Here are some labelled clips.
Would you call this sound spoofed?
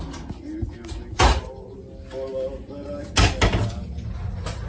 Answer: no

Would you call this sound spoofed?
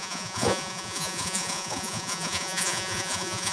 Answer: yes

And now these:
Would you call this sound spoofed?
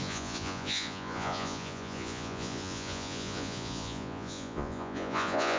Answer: yes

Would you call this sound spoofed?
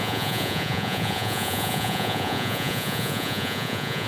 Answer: yes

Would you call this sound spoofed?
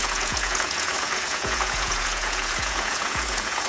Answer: yes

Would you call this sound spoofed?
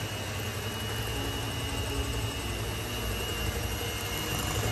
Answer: no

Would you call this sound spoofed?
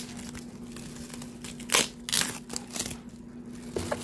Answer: no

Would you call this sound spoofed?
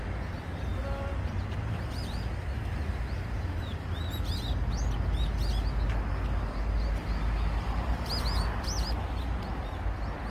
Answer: no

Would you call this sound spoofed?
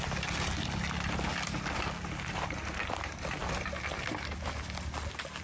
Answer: no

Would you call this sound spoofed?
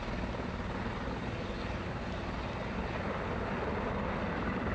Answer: no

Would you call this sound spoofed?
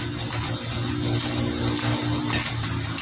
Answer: no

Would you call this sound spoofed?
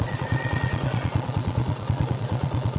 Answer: yes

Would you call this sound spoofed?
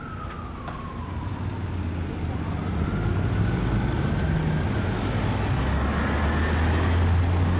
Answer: no